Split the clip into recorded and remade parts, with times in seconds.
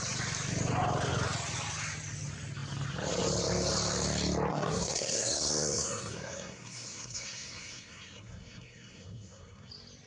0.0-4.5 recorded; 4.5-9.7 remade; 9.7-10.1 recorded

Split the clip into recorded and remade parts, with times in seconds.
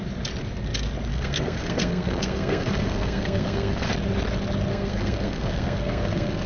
0.0-1.1 recorded; 1.1-3.9 remade; 3.9-4.7 recorded; 4.7-6.5 remade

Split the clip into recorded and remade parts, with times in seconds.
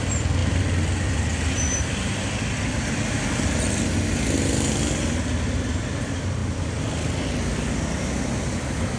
0.0-9.0 recorded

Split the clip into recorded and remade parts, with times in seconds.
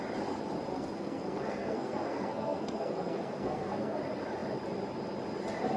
0.0-0.7 recorded; 0.7-4.0 remade; 4.0-5.8 recorded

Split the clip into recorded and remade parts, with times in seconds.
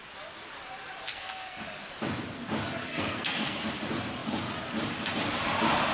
0.0-1.1 recorded; 1.1-1.6 remade; 1.6-2.8 recorded; 2.8-3.6 remade; 3.6-5.9 recorded